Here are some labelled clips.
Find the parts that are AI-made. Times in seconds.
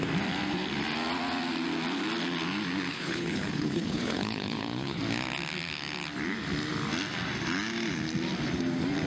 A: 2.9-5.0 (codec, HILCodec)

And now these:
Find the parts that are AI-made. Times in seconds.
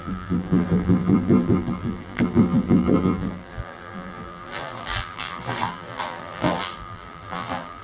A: 0.0-7.8 (vocoder, BigVGAN v2)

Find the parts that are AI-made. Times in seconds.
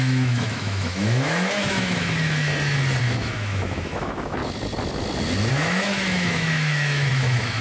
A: 0.0-2.5 (autoencoder, DAC-VAE); 3.0-4.4; 5.5-7.6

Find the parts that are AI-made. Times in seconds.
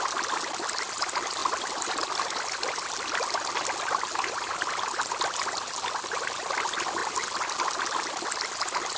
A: none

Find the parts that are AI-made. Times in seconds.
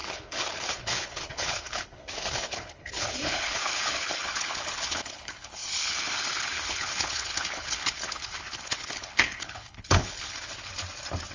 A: 0.0-10.7 (codec, HILCodec)